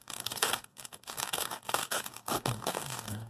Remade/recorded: remade